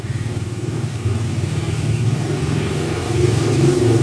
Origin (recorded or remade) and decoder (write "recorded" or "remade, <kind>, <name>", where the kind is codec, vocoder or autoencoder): remade, codec, DAC